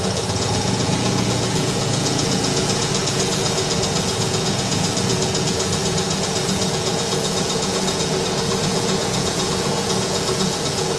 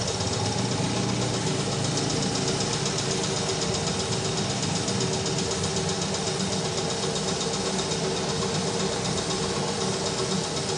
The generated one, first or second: first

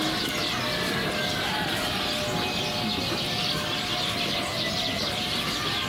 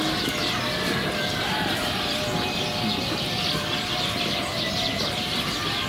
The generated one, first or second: second